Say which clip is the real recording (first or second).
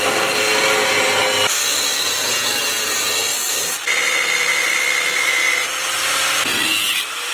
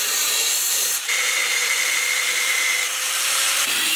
first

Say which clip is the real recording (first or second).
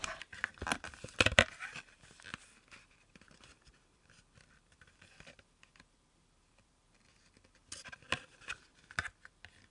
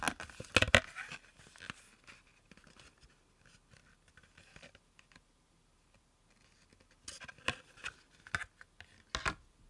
second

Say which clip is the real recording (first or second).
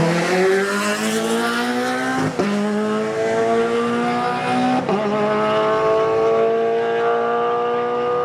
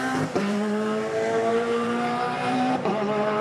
first